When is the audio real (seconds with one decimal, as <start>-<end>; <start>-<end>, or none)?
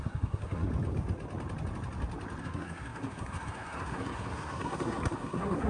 0.7-2.4